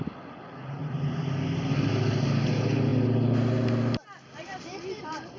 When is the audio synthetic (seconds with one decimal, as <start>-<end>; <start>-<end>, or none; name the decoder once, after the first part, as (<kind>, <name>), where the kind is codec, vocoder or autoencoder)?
none